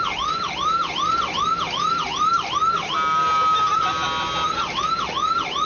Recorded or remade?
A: recorded